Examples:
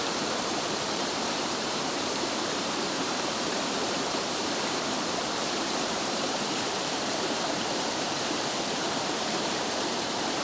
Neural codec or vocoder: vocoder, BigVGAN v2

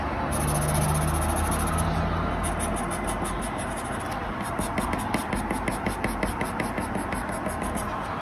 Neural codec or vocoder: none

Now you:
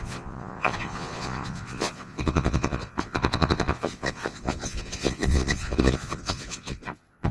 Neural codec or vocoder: vocoder, Vocos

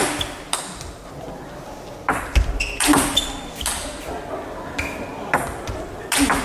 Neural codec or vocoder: none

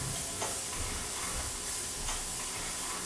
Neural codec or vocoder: none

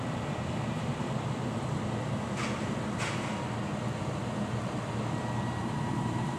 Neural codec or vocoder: vocoder, BigVGAN v2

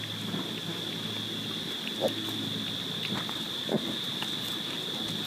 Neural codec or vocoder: none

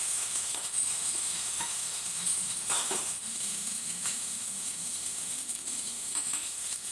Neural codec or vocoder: autoencoder, DAC-VAE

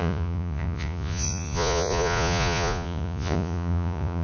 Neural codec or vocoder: vocoder, Vocos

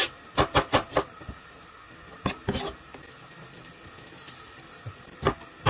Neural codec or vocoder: none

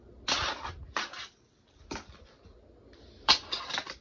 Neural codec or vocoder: none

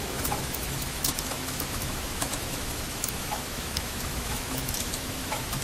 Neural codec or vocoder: autoencoder, DAC-VAE